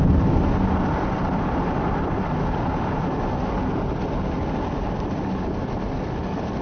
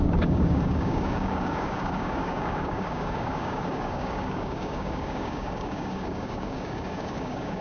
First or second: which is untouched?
first